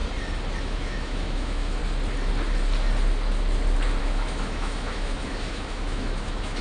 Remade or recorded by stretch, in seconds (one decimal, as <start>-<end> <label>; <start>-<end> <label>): 0.0-0.6 recorded; 0.6-1.8 remade; 1.8-4.0 recorded; 4.0-6.6 remade